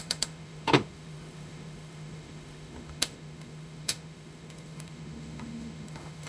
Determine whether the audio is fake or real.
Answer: fake